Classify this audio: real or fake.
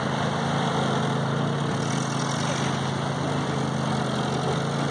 real